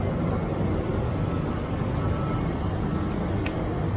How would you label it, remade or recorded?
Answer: recorded